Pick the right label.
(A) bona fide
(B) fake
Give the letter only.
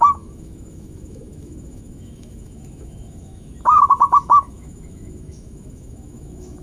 B